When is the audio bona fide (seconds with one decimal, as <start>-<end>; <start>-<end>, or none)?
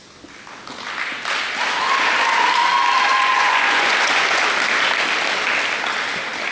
0.0-3.1; 4.4-6.5